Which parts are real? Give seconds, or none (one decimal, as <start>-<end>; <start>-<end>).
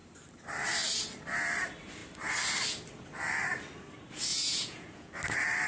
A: 0.0-4.3; 5.1-5.7